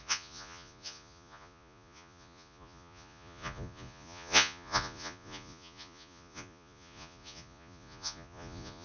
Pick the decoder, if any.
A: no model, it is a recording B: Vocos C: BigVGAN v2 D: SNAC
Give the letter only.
B